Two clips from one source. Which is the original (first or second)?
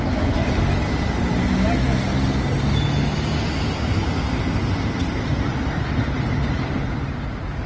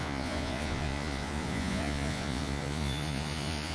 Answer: first